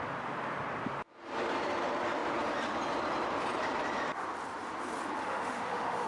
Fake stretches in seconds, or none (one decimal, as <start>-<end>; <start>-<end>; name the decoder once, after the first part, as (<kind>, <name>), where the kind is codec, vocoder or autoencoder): 5.2-6.1 (autoencoder, DAC-VAE)